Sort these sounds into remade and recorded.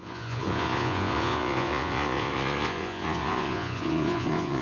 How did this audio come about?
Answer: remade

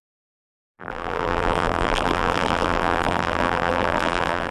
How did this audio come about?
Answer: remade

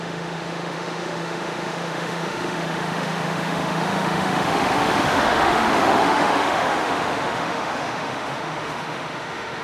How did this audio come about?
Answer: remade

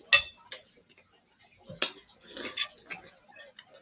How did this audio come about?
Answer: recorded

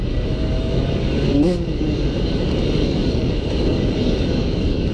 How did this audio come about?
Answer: remade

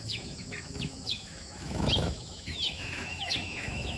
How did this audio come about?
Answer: remade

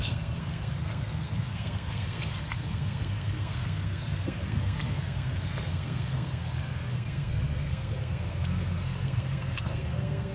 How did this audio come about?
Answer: remade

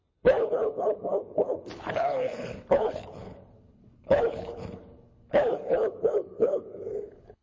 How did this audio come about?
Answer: remade